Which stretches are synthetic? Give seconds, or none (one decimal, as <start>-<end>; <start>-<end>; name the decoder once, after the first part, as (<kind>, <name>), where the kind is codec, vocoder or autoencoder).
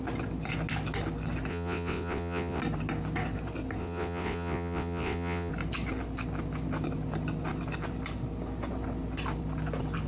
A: 1.5-2.6 (vocoder, WaveNeXt); 3.8-5.5